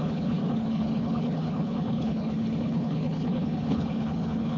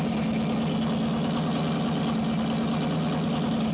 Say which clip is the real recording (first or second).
second